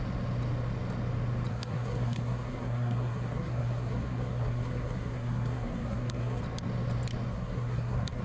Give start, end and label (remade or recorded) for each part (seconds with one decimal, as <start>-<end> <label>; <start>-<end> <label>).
0.0-1.5 recorded; 1.5-6.4 remade; 6.4-7.3 recorded; 7.3-8.2 remade

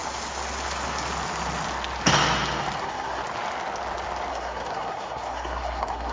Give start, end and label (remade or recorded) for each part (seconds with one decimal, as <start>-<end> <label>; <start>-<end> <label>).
0.0-2.8 recorded; 2.8-3.2 remade; 3.2-4.3 recorded; 4.3-6.1 remade

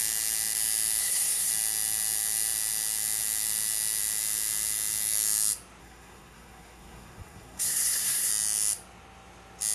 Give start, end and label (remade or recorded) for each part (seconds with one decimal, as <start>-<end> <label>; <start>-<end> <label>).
0.0-1.0 recorded; 1.0-1.5 remade; 1.5-5.8 recorded; 5.8-8.3 remade; 8.3-9.7 recorded

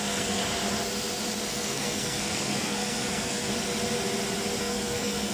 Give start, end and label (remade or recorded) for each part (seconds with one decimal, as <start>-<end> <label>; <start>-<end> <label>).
0.0-0.4 remade; 0.4-1.5 recorded; 1.5-3.5 remade; 3.5-4.6 recorded; 4.6-5.3 remade

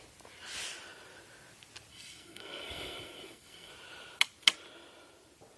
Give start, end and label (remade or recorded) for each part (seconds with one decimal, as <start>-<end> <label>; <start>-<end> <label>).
0.0-1.9 recorded; 1.9-3.7 remade; 3.7-5.6 recorded

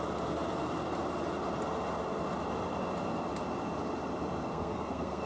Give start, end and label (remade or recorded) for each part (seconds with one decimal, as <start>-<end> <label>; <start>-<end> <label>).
0.0-4.5 recorded; 4.5-5.3 remade

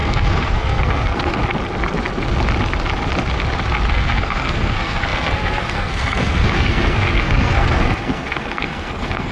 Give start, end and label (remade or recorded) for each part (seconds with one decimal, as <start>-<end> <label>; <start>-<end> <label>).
0.0-1.4 remade; 1.4-3.9 recorded; 3.9-9.3 remade

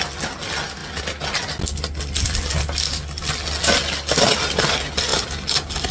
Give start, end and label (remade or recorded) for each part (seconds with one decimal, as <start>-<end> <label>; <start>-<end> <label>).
0.0-5.9 recorded